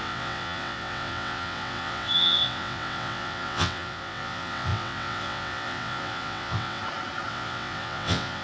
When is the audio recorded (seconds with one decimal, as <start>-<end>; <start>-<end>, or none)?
6.8-7.3

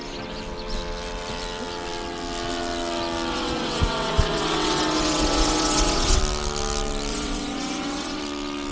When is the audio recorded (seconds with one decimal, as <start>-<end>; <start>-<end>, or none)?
0.0-3.3; 6.2-7.1; 8.2-8.7

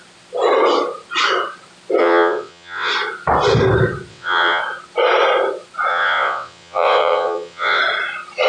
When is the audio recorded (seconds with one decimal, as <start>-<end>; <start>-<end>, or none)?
0.0-2.0; 2.9-4.1; 4.6-5.9; 7.8-8.5

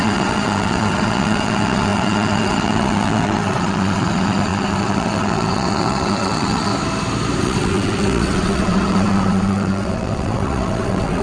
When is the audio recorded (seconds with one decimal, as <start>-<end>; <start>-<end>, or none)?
6.7-7.4

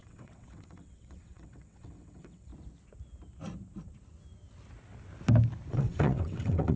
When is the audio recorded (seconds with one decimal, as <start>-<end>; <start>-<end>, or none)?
2.5-5.7

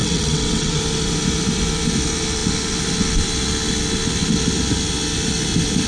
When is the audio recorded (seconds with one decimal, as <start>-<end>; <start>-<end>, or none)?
0.8-5.9

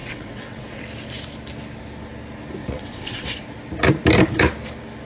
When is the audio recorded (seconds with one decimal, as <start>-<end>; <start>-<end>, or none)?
0.8-2.6; 3.4-5.0

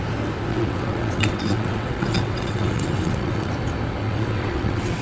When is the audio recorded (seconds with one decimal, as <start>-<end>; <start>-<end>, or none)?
0.0-0.5; 3.5-4.0